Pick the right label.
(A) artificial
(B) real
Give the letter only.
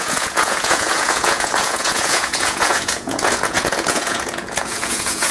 A